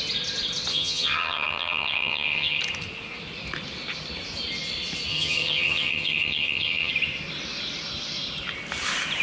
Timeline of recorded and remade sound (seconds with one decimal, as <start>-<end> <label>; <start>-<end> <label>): 0.0-0.7 recorded; 0.7-2.6 remade; 2.6-5.1 recorded; 5.1-6.9 remade; 6.9-9.2 recorded